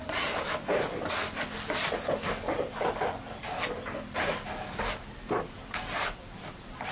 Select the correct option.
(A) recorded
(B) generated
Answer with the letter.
A